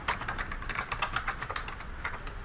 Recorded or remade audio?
recorded